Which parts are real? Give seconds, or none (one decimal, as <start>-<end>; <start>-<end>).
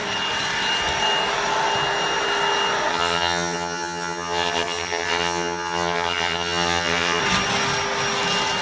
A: 0.0-2.9; 7.2-8.6